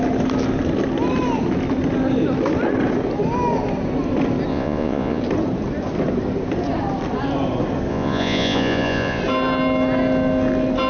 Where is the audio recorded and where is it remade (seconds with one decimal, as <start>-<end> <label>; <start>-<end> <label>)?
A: 0.0-4.5 recorded; 4.5-5.2 remade; 5.2-7.9 recorded; 7.9-9.2 remade; 9.2-10.9 recorded